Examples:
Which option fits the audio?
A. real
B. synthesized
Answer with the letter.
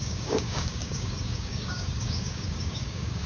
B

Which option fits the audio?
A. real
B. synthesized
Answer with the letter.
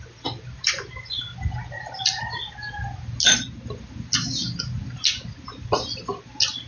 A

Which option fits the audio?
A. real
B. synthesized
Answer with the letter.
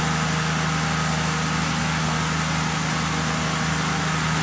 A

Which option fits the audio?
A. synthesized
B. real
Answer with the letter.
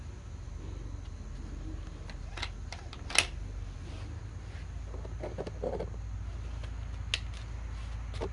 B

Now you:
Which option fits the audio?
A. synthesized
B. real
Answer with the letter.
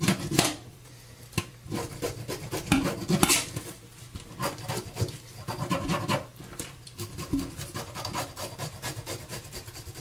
A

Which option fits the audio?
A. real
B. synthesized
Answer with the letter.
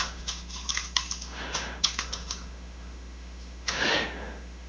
B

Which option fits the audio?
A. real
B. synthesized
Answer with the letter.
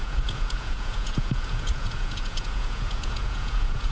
B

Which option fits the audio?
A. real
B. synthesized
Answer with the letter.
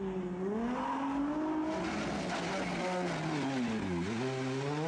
A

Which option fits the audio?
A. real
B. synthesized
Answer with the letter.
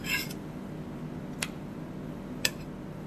A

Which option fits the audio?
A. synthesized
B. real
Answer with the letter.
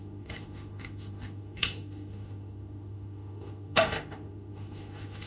A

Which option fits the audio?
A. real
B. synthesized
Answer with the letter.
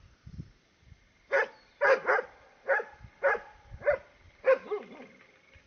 A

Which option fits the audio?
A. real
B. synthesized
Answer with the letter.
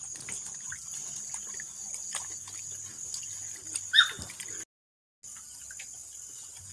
A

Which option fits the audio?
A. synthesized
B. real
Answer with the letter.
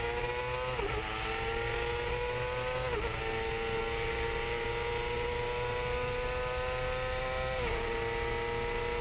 B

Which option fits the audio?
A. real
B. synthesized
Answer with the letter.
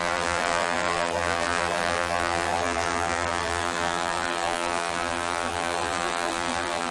B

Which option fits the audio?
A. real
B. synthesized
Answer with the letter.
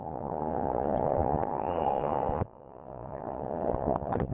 B